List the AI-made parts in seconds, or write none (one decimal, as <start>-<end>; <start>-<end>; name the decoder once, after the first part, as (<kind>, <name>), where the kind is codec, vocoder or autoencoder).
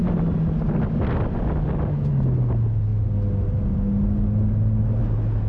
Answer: none